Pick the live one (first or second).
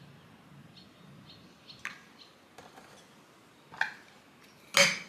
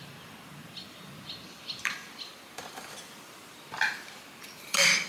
first